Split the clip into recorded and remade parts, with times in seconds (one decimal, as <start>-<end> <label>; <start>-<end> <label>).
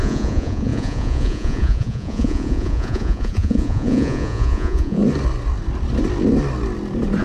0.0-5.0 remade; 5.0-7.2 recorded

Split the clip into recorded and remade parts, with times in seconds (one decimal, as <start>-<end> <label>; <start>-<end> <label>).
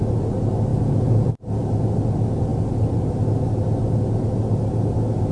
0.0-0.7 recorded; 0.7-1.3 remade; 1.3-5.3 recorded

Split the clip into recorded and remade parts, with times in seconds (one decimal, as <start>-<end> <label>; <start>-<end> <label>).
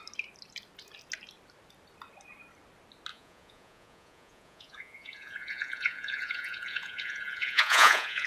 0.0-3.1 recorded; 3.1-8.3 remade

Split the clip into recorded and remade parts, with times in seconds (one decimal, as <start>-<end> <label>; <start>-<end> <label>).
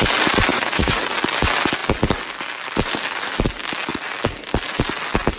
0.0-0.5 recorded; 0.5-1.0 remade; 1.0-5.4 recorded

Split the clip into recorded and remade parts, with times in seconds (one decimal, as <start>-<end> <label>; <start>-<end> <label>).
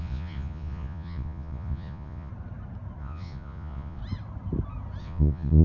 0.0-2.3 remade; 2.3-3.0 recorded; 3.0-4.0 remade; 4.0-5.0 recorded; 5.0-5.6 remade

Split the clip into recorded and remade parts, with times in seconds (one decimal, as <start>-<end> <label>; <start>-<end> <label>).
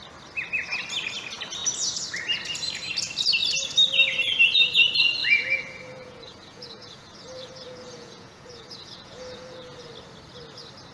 0.0-5.2 recorded; 5.2-9.9 remade; 9.9-10.9 recorded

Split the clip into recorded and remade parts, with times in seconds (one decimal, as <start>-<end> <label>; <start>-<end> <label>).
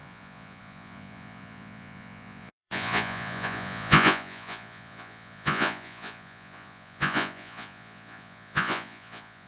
0.0-9.5 remade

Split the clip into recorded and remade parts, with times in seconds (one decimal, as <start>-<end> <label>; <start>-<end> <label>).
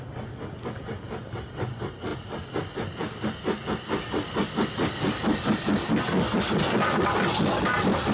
0.0-8.1 recorded